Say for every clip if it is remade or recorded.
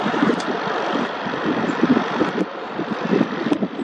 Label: recorded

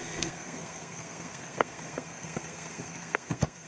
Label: remade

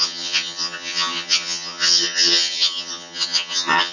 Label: remade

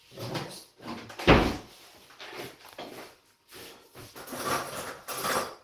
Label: recorded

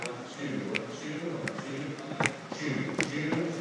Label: remade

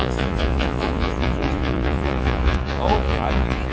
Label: remade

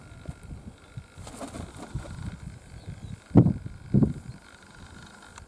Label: recorded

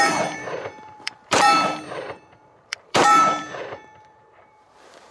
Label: remade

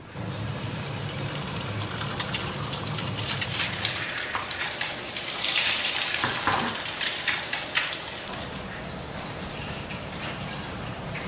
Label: remade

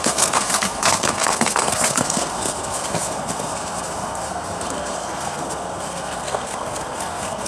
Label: remade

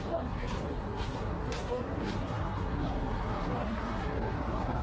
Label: remade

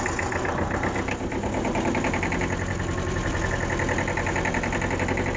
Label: recorded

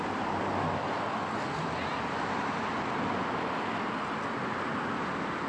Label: recorded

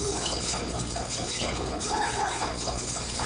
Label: remade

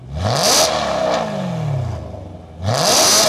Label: recorded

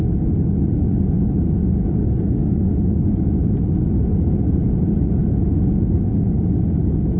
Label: recorded